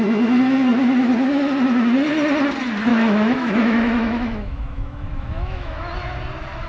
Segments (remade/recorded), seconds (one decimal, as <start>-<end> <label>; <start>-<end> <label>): 0.0-2.9 recorded; 2.9-5.8 remade; 5.8-6.7 recorded